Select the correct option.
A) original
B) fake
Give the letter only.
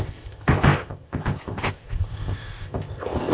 B